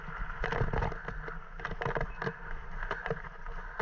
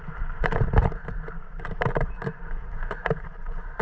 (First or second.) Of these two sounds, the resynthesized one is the second